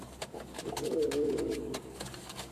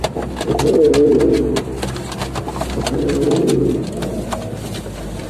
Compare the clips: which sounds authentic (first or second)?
second